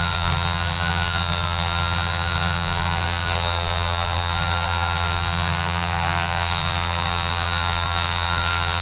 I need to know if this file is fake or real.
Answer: fake